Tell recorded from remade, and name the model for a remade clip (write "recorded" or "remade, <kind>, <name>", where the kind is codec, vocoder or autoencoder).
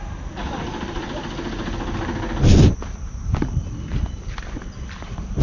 recorded